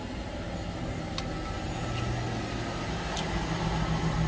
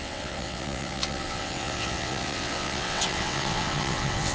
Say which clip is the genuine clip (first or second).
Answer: first